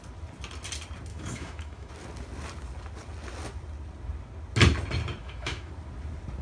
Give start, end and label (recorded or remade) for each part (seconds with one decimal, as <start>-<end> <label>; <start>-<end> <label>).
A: 0.0-1.1 recorded; 1.1-1.9 remade; 1.9-5.2 recorded; 5.2-5.7 remade; 5.7-6.4 recorded